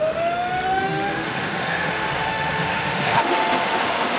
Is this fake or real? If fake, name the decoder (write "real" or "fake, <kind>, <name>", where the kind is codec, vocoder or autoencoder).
fake, autoencoder, DAC-VAE